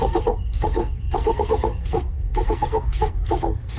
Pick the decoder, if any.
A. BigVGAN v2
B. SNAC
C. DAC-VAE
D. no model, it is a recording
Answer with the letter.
B